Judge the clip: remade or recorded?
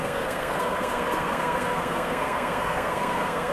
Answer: remade